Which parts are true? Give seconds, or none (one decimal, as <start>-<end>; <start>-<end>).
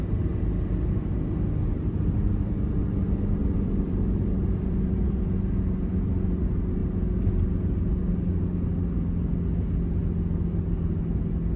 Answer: 0.0-1.8; 2.8-3.4; 5.9-11.6